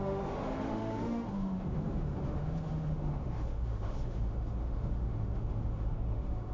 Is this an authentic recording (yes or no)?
no